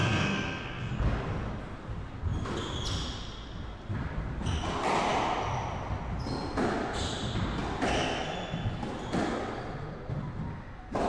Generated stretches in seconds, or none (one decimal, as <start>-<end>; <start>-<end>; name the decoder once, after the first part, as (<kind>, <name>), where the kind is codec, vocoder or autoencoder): 0.0-0.9 (codec, SNAC)